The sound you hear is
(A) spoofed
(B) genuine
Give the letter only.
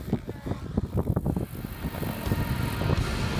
B